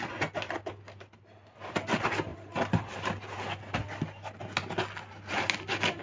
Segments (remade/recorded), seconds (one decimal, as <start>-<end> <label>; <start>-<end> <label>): 0.0-6.0 recorded